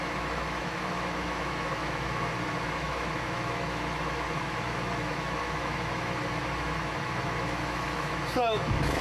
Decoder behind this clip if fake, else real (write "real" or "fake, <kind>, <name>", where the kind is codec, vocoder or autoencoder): fake, autoencoder, DAC-VAE